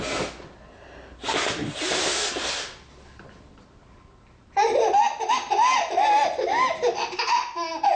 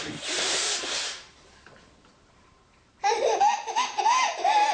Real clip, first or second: first